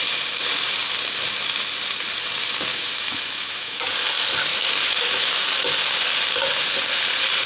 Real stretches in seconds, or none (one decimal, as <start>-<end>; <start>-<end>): 0.0-2.7; 3.9-4.5; 5.4-7.5